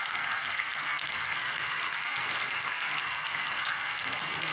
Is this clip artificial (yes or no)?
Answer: yes